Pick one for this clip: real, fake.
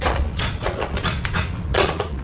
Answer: fake